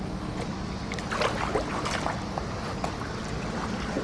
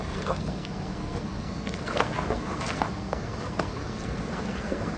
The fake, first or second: second